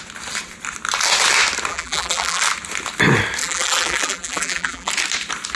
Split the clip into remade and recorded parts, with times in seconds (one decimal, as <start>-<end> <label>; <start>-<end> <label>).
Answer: 0.0-1.7 recorded; 1.7-2.4 remade; 2.4-3.4 recorded; 3.4-4.9 remade; 4.9-5.6 recorded